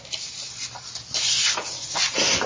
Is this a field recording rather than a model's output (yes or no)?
yes